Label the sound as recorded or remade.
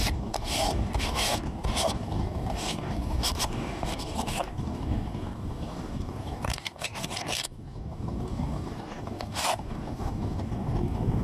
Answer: remade